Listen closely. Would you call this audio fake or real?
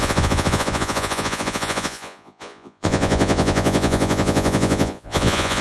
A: fake